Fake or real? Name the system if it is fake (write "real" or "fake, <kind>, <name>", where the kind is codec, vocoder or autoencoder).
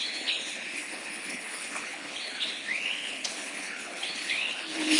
fake, codec, HILCodec